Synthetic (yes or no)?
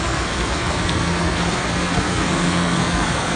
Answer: yes